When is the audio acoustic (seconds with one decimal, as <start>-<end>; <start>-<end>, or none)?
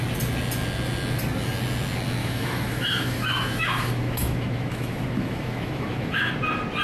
0.0-2.2; 6.3-6.8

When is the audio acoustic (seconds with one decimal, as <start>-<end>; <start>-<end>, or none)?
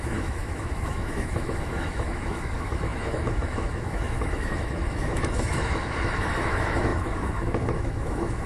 none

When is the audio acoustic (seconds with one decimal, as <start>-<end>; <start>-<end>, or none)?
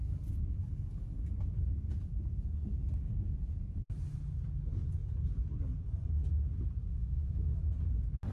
0.0-7.0; 7.7-8.3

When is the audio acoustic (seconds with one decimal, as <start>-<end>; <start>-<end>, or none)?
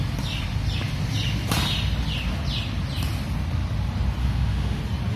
0.0-4.2; 4.8-5.2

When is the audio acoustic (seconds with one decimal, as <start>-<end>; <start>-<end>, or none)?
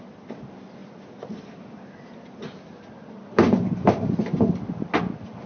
0.0-5.5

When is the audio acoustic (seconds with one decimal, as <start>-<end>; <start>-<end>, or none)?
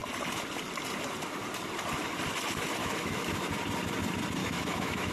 0.0-2.8; 3.5-4.4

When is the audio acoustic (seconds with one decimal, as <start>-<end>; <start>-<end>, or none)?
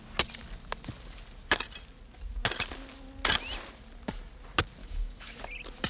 0.0-4.8; 5.4-5.9